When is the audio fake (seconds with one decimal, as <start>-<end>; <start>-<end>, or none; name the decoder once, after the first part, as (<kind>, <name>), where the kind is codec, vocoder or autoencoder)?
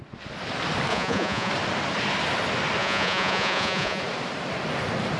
0.9-1.5 (vocoder, Vocos); 2.8-4.0